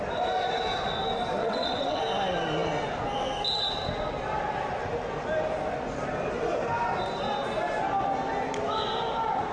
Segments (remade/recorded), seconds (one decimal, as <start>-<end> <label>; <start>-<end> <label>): 0.0-1.4 recorded; 1.4-2.0 remade; 2.0-9.5 recorded

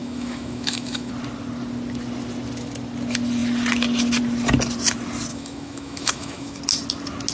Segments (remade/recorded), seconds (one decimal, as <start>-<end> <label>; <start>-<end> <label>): 0.0-1.1 remade; 1.1-5.3 recorded; 5.3-6.6 remade; 6.6-7.3 recorded

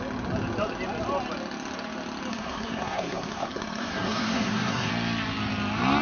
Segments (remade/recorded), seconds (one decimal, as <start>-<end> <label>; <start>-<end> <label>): 0.0-2.3 recorded; 2.3-4.9 remade; 4.9-6.0 recorded